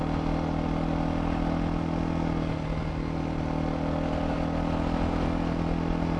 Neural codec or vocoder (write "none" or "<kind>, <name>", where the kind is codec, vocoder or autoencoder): none